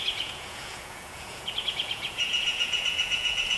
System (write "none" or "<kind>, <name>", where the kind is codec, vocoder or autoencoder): vocoder, Vocos